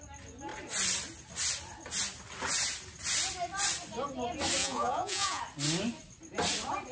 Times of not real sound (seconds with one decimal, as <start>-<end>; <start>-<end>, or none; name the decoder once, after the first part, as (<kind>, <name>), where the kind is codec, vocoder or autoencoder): 4.6-5.4 (vocoder, Vocos)